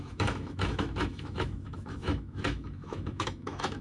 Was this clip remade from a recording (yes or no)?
yes